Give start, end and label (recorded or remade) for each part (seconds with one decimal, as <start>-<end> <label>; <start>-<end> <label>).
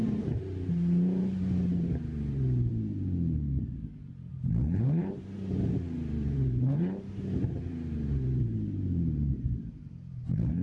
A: 0.0-2.7 remade; 2.7-4.3 recorded; 4.3-10.6 remade